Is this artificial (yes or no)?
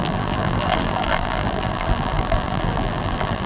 yes